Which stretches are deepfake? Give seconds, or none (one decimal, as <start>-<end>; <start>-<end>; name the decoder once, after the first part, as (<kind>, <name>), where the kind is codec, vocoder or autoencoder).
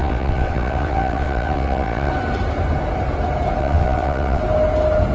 0.0-2.1 (vocoder, WaveNeXt); 3.6-4.4